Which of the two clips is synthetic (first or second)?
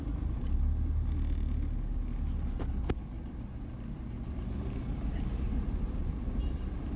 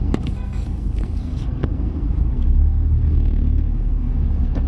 second